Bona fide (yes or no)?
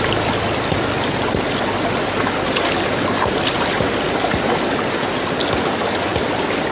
yes